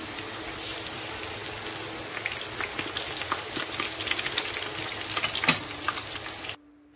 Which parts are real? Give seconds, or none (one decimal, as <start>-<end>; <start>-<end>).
0.0-7.0